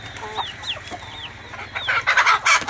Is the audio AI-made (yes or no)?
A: no